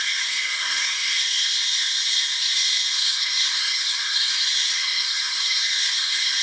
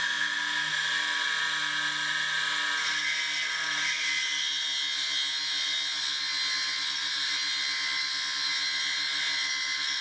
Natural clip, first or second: second